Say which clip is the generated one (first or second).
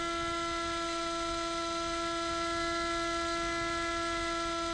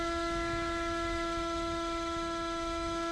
second